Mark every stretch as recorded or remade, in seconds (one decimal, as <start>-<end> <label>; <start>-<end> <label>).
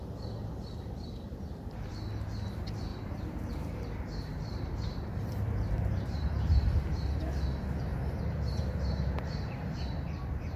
0.0-2.9 recorded; 2.9-7.2 remade; 7.2-7.9 recorded; 7.9-10.0 remade; 10.0-10.6 recorded